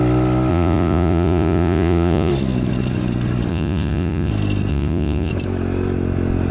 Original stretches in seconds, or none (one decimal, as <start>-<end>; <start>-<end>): 0.0-0.5; 2.3-3.5; 4.3-4.7; 5.3-6.5